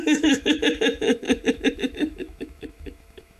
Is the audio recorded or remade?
remade